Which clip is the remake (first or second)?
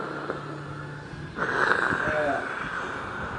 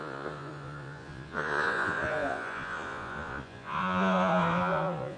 second